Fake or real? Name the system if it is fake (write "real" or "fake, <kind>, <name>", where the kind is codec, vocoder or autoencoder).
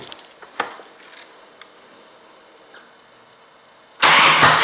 real